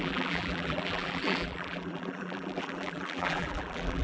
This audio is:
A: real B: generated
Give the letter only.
B